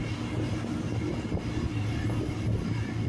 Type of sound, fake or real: real